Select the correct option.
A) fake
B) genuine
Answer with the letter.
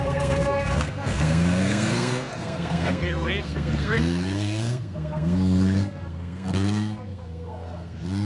A